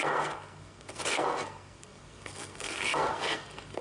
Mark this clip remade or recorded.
remade